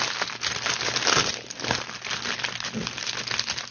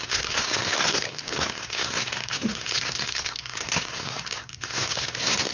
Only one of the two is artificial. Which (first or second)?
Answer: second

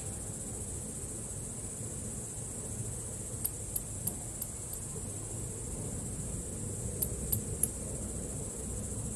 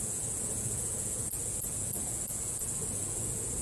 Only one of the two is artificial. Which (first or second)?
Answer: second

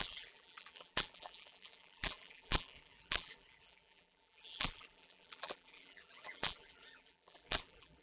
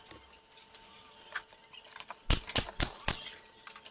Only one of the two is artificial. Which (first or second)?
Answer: first